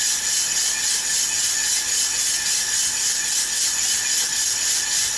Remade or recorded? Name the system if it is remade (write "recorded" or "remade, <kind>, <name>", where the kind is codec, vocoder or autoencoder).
recorded